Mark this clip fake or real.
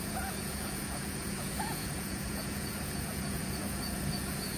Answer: fake